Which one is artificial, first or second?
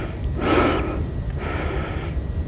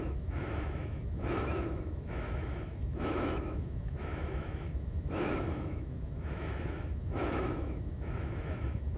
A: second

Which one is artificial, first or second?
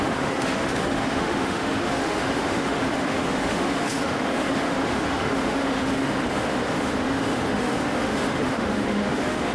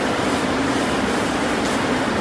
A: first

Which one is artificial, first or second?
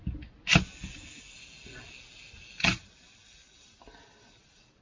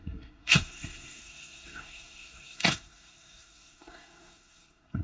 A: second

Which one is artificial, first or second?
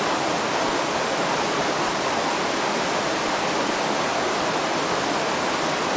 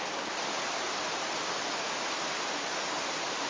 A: second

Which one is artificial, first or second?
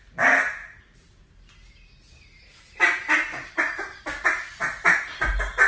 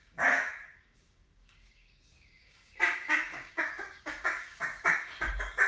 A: second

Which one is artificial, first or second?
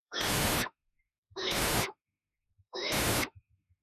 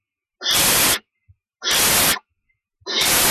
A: first